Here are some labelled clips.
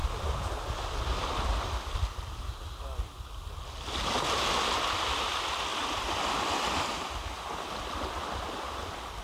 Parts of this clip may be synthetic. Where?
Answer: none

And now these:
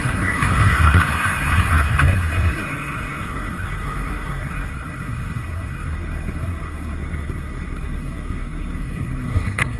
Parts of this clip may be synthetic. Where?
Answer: 0.0-9.8 (codec, SNAC)

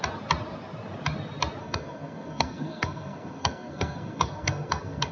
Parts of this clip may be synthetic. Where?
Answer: 1.6-5.1 (codec, SNAC)

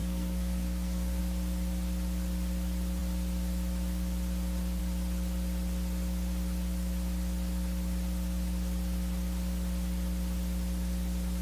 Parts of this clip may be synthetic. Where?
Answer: 0.0-1.2 (codec, SNAC)

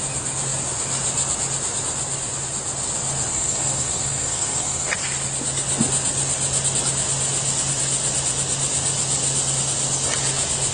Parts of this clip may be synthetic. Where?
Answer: 3.3-4.9 (codec, SNAC)

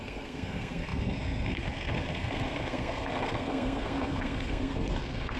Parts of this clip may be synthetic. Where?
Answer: 0.0-5.4 (codec, SNAC)